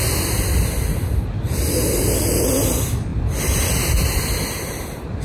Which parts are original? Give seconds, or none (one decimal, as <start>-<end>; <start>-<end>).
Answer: 0.0-5.2